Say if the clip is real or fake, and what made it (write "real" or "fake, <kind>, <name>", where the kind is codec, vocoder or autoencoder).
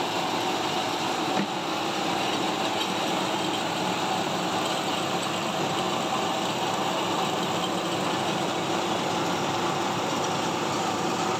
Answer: real